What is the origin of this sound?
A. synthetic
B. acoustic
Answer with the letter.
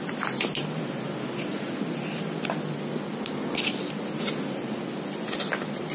B